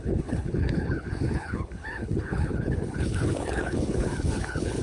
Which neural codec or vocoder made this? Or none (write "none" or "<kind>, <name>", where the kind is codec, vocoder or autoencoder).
codec, HILCodec